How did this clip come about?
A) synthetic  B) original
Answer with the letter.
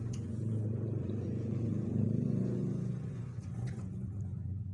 A